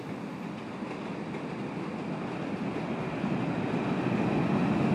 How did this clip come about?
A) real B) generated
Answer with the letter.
A